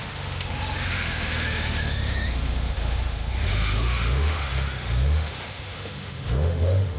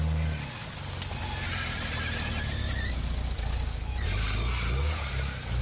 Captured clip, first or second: second